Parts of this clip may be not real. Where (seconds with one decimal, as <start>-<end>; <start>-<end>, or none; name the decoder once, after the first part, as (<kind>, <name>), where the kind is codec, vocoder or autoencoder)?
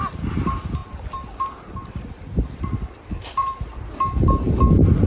0.8-3.9 (vocoder, BigVGAN v2)